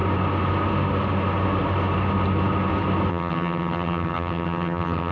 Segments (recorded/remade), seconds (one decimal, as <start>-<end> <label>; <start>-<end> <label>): 0.0-3.1 recorded; 3.1-5.1 remade